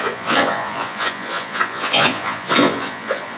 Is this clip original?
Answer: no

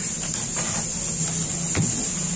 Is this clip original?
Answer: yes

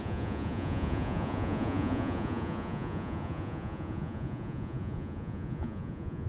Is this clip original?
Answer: no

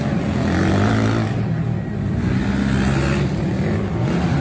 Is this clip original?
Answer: yes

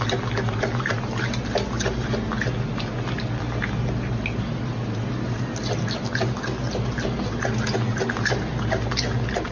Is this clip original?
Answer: yes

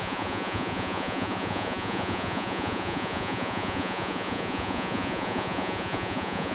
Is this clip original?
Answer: no